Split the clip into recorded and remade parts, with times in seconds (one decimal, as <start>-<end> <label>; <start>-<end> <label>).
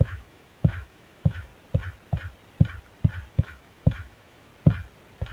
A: 0.0-1.5 remade; 1.5-3.3 recorded; 3.3-4.5 remade; 4.5-5.3 recorded